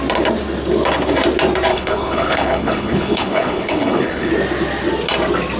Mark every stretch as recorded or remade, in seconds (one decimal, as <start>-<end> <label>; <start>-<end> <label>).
0.0-1.7 recorded; 1.7-4.3 remade; 4.3-5.6 recorded